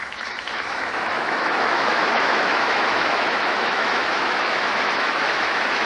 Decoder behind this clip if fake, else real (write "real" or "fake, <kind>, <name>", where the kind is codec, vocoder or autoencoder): fake, autoencoder, DAC-VAE